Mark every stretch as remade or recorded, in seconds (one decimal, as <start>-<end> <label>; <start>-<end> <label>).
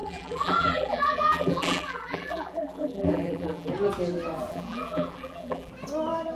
0.0-3.7 remade; 3.7-4.5 recorded; 4.5-5.7 remade; 5.7-6.3 recorded